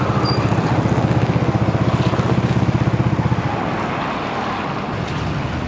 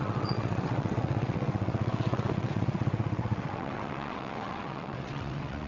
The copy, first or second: second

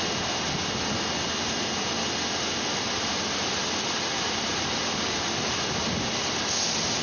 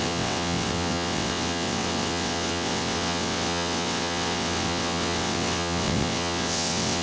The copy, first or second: second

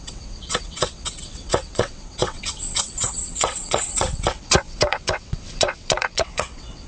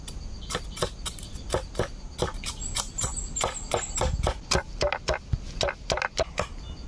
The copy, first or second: first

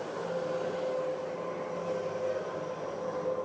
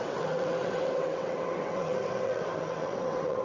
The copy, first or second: second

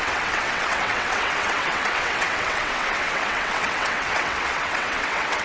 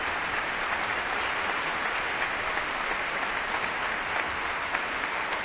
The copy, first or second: first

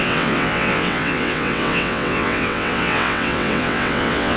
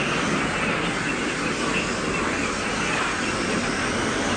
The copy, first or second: first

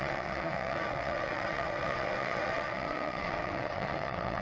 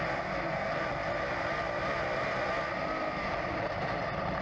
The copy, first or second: first